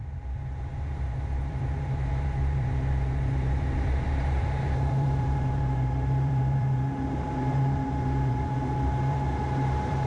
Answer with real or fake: fake